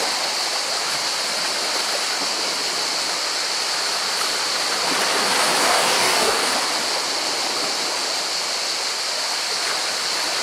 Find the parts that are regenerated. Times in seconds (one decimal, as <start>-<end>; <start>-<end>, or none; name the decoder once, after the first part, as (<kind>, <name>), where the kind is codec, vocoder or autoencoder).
5.6-6.5 (codec, DAC)